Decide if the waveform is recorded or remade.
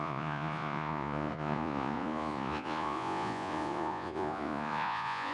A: remade